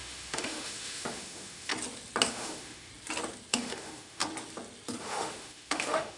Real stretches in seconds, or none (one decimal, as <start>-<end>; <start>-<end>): 1.7-2.3; 2.9-3.5; 4.2-5.0